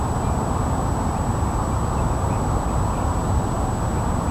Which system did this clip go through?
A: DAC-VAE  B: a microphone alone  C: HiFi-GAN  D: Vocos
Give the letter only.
B